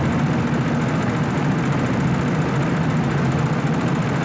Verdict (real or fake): real